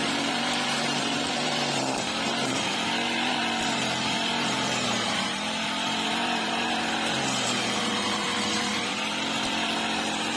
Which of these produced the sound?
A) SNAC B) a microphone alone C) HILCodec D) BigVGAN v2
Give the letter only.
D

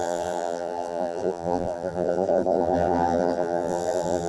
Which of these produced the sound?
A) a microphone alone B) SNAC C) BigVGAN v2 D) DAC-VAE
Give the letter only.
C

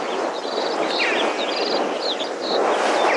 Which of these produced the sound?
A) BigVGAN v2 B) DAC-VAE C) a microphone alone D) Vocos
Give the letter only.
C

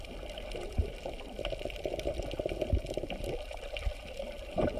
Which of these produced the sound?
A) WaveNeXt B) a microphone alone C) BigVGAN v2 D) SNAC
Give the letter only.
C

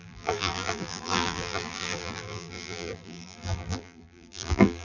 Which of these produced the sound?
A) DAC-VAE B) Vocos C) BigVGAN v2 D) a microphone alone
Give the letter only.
C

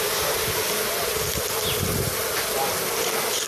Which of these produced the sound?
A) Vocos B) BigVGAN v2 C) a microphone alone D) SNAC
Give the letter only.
C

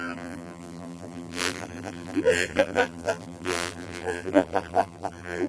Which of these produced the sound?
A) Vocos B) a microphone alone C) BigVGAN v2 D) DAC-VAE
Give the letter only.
C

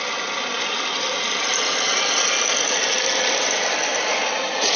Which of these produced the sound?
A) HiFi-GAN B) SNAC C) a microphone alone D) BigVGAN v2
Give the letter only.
C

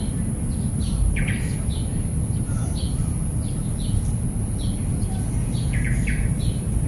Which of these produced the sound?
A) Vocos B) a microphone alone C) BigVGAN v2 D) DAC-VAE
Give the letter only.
B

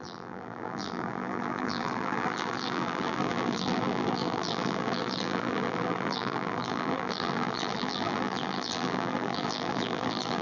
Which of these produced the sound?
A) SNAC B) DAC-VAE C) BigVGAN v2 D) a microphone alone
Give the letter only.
C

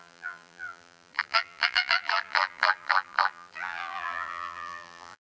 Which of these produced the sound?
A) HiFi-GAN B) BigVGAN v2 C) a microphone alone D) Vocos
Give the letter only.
B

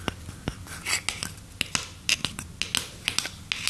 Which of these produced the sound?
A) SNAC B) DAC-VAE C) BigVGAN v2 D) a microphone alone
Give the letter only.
D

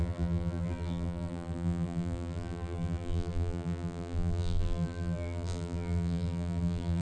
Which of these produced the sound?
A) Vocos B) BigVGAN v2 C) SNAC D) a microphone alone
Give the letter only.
B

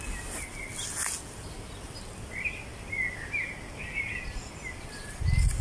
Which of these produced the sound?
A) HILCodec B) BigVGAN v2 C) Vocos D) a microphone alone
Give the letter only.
D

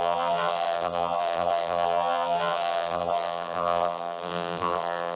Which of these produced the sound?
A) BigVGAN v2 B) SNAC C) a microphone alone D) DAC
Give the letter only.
A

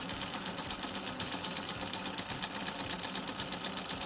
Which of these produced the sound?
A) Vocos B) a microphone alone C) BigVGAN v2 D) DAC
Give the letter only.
B